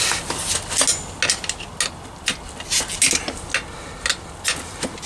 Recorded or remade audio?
recorded